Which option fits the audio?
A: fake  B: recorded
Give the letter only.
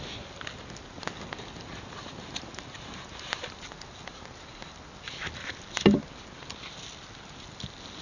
B